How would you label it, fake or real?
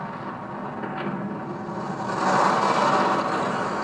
real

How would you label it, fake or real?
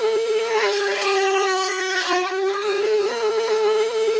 fake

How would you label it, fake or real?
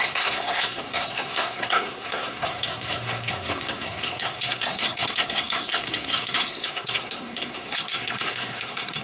fake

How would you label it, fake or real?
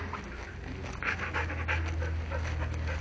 real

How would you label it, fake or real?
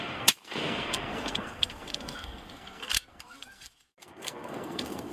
fake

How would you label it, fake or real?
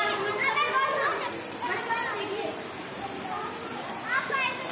real